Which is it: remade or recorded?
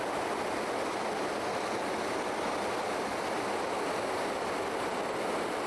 recorded